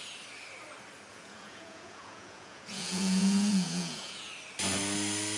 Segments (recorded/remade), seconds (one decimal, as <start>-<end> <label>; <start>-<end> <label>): 0.0-1.1 recorded; 1.1-4.3 remade; 4.3-5.4 recorded